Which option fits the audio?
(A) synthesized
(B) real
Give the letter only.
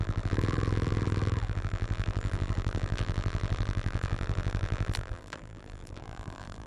A